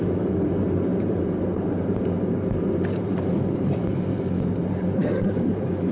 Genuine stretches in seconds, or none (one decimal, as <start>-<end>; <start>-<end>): none